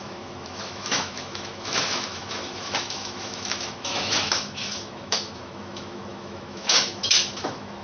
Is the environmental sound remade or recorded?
remade